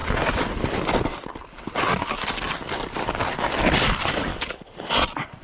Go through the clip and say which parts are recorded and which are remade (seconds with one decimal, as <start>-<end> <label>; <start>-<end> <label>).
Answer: 0.0-4.3 recorded; 4.3-4.8 remade; 4.8-5.4 recorded